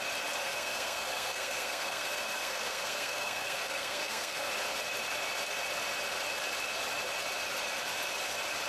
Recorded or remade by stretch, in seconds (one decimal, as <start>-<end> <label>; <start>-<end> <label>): 0.0-0.4 recorded; 0.4-4.5 remade; 4.5-8.7 recorded